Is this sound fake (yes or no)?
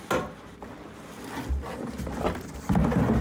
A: no